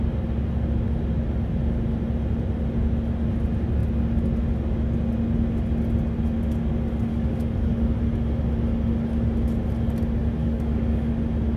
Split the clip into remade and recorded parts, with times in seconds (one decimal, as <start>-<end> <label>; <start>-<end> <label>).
0.0-7.1 recorded; 7.1-8.0 remade; 8.0-10.4 recorded; 10.4-11.1 remade; 11.1-11.6 recorded